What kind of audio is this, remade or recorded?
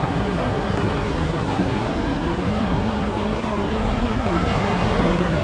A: remade